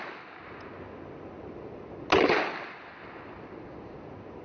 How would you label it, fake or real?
real